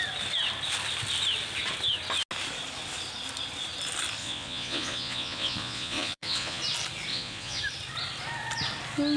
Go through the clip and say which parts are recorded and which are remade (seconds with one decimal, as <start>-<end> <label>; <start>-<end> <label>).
0.0-4.2 recorded; 4.2-6.6 remade; 6.6-7.1 recorded; 7.1-7.6 remade; 7.6-9.2 recorded